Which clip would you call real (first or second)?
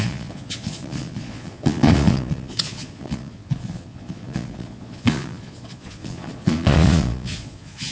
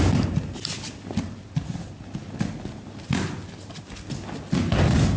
second